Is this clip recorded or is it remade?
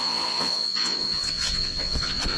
remade